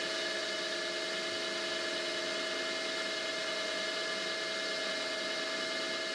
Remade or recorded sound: recorded